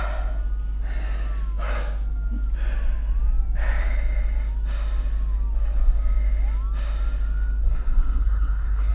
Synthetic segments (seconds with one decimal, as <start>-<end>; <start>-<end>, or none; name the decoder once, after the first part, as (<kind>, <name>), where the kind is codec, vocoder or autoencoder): 7.6-8.9 (codec, SNAC)